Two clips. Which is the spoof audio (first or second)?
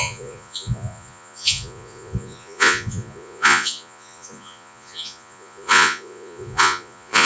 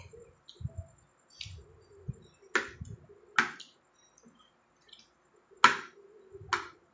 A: first